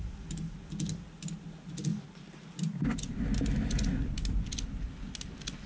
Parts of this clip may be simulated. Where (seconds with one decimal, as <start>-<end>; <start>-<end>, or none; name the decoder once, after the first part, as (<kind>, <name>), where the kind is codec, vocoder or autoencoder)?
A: none